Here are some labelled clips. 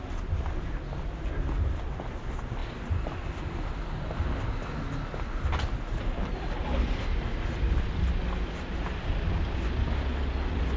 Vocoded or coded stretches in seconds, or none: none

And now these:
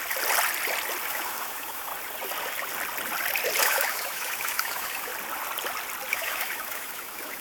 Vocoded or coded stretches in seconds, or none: 1.1-1.9 (autoencoder, DAC-VAE); 3.6-5.1; 6.1-7.4